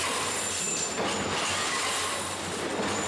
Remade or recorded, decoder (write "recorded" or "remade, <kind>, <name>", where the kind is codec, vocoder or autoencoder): recorded